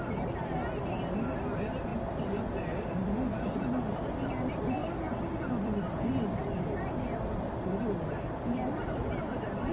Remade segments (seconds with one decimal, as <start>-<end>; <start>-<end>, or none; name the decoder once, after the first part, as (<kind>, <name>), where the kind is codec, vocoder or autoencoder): 1.9-2.4 (vocoder, BigVGAN v2); 4.8-7.7